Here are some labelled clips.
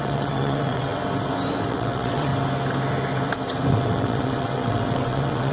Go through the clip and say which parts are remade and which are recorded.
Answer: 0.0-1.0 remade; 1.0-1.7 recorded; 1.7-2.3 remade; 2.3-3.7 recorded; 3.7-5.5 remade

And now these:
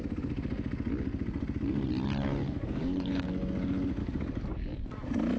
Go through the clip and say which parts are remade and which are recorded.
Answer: 0.0-2.4 recorded; 2.4-3.3 remade; 3.3-4.0 recorded; 4.0-4.9 remade; 4.9-5.4 recorded

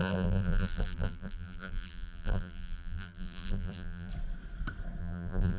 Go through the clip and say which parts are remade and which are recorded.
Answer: 0.0-4.1 remade; 4.1-5.0 recorded; 5.0-5.6 remade

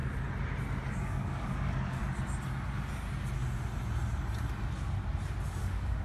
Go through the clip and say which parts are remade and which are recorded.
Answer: 0.0-0.9 recorded; 0.9-2.0 remade; 2.0-5.6 recorded; 5.6-6.0 remade

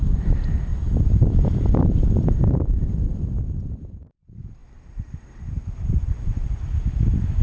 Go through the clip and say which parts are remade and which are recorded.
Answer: 0.0-0.7 remade; 0.7-1.3 recorded; 1.3-7.4 remade

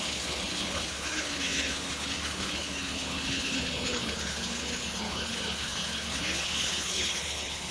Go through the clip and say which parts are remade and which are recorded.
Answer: 0.0-7.7 remade

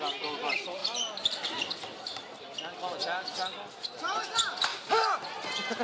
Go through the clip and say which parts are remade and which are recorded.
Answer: 0.0-5.8 recorded

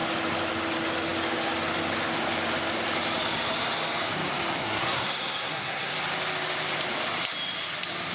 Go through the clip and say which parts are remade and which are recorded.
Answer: 0.0-4.6 recorded; 4.6-5.9 remade; 5.9-8.1 recorded